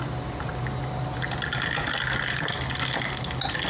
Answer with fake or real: real